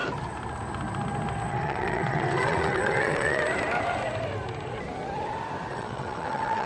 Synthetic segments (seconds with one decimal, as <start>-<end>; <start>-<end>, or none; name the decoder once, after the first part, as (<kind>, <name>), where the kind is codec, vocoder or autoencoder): 1.5-3.4 (vocoder, WaveNeXt); 5.7-6.7